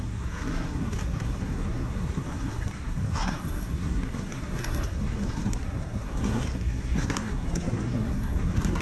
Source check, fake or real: fake